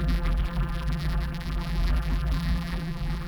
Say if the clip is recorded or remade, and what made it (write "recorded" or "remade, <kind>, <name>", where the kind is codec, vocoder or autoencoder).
remade, vocoder, BigVGAN v2